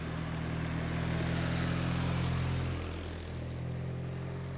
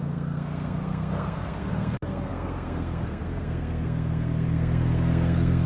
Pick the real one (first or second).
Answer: first